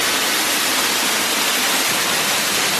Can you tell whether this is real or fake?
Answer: real